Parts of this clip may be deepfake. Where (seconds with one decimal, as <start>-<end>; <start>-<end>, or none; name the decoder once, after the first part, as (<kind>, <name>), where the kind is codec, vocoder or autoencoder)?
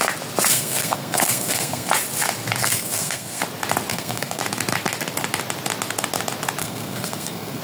0.5-1.9 (codec, SNAC); 2.6-3.4; 3.9-4.4; 6.6-7.6